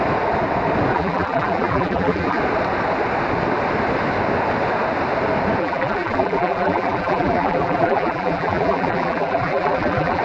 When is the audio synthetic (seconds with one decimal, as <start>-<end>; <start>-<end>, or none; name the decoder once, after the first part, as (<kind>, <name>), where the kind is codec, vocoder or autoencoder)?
0.9-2.4 (vocoder, BigVGAN v2); 5.6-10.2